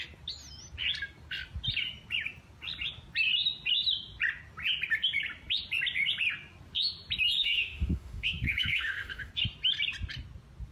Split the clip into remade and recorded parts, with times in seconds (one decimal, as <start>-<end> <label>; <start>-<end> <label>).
0.0-7.4 recorded; 7.4-9.3 remade; 9.3-10.7 recorded